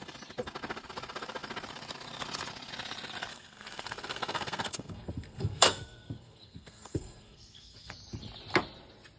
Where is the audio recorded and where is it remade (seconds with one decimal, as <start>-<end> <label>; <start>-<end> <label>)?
0.0-3.3 recorded; 3.3-8.0 remade; 8.0-9.2 recorded